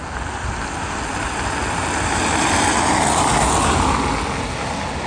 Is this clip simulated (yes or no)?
no